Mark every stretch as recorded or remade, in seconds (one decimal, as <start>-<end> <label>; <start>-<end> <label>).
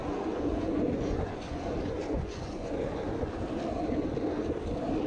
0.0-3.0 remade; 3.0-5.1 recorded